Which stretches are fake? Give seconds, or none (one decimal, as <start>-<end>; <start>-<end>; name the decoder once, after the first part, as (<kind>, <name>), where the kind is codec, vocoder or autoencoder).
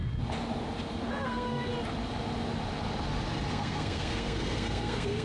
1.1-1.7 (codec, SNAC); 3.5-5.2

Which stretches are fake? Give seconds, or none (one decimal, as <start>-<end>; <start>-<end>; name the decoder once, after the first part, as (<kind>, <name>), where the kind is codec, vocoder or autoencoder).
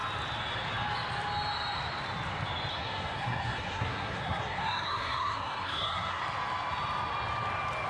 2.7-6.2 (codec, SNAC)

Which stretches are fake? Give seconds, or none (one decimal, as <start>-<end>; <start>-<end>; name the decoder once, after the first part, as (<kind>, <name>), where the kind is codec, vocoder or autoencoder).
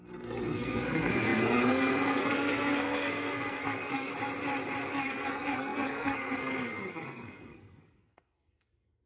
0.0-4.1 (codec, SNAC); 4.9-9.1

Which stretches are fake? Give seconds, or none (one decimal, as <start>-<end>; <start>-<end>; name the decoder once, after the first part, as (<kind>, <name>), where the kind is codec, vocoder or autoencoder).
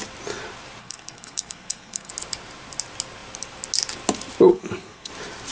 0.8-2.1 (codec, SNAC); 4.5-5.1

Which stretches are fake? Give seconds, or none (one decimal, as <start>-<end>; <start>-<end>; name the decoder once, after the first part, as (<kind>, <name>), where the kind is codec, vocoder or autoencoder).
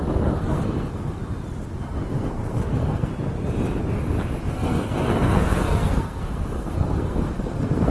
0.0-1.2 (codec, SNAC); 2.1-3.1; 4.5-7.9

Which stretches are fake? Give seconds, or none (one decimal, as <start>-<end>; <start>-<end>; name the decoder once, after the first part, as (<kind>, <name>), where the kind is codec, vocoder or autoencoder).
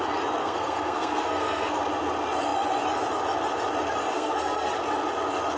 0.4-1.8 (codec, SNAC); 4.1-4.7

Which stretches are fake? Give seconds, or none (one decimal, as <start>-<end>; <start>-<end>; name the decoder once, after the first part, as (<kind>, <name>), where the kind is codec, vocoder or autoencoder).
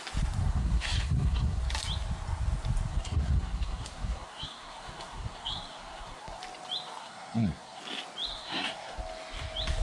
0.4-1.6 (codec, SNAC); 2.9-6.4; 7.0-7.8; 8.3-9.0